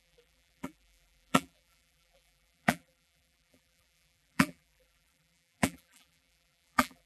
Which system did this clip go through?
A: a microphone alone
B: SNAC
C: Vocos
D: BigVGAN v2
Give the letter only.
D